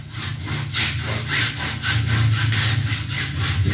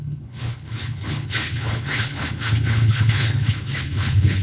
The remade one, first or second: second